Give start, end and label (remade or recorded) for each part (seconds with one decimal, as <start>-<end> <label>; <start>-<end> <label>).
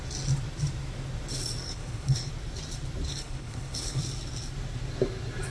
0.0-1.6 recorded; 1.6-2.3 remade; 2.3-3.1 recorded; 3.1-4.0 remade; 4.0-5.5 recorded